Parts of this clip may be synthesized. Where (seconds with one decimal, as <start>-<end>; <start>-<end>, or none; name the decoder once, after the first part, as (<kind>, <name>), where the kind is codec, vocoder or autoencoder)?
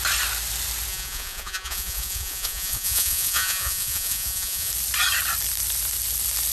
0.9-4.7 (vocoder, Vocos)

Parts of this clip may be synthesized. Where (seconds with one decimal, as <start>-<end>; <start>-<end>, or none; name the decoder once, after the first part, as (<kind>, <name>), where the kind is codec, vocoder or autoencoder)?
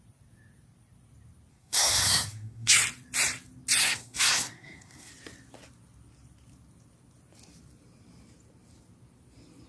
1.5-2.8 (codec, SNAC); 3.8-5.1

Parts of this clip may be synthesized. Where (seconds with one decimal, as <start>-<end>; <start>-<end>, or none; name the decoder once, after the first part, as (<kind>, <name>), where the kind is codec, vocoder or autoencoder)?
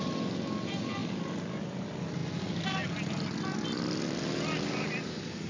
none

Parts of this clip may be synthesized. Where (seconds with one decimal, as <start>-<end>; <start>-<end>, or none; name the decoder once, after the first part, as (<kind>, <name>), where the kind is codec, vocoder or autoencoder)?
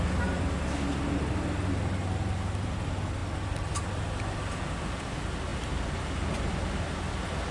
none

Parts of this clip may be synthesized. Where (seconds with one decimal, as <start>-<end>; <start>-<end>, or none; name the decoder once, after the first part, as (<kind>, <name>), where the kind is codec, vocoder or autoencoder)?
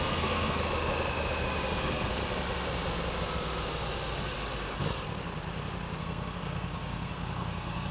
0.0-0.6 (codec, SNAC); 1.8-2.2; 6.0-7.9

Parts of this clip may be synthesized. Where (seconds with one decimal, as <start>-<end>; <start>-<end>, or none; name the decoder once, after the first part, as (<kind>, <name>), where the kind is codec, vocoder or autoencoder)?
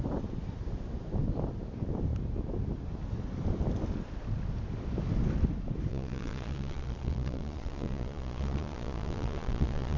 5.9-10.0 (vocoder, Vocos)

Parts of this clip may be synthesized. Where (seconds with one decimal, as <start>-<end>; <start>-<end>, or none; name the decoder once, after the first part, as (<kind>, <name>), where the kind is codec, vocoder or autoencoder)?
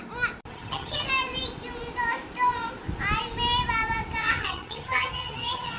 0.5-1.1 (vocoder, HiFi-GAN); 4.2-5.8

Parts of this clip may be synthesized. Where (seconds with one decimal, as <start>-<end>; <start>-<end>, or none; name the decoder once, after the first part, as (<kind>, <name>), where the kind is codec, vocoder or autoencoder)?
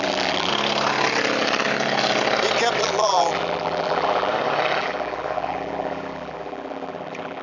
0.0-0.5 (vocoder, BigVGAN v2); 2.8-4.3; 4.8-7.4